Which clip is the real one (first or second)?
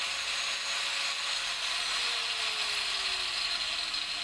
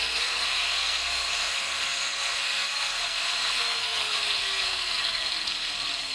first